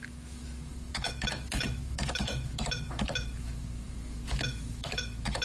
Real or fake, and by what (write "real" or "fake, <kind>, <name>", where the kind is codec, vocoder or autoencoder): fake, autoencoder, DAC-VAE